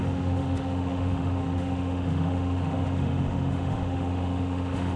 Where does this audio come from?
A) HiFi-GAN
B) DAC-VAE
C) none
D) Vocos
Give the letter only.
B